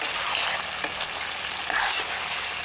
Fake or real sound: real